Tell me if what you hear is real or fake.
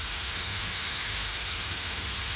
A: fake